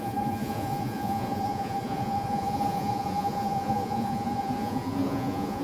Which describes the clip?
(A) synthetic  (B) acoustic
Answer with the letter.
A